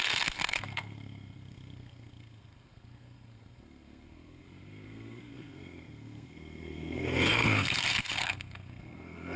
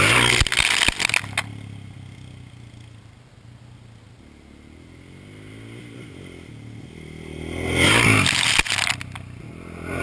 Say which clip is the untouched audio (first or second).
second